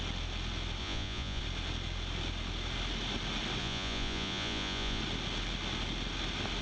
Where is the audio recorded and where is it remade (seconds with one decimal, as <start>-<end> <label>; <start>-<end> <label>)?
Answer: 0.0-0.8 recorded; 0.8-1.4 remade; 1.4-3.6 recorded; 3.6-5.0 remade; 5.0-6.6 recorded